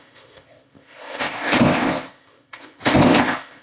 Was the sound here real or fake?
fake